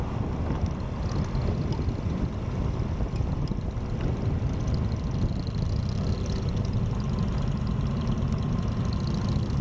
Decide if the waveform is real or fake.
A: real